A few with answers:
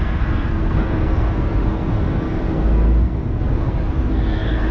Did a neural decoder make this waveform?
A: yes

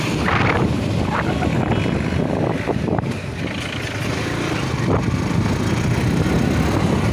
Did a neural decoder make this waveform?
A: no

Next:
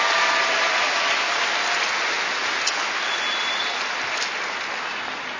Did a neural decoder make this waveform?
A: no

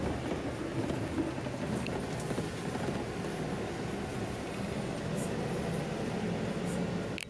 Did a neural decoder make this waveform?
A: no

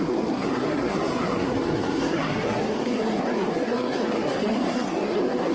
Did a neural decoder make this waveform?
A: yes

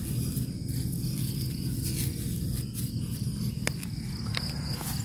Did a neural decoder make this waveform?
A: no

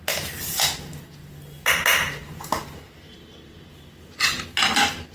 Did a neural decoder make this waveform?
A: no